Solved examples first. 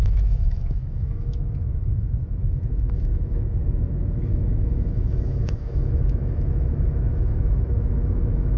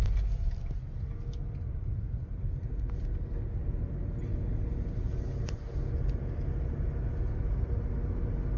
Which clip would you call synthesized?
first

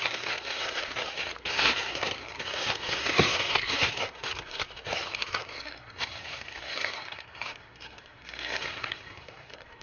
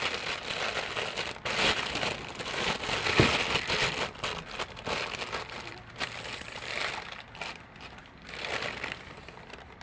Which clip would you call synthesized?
first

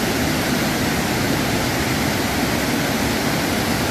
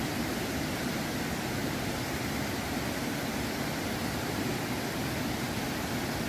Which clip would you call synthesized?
second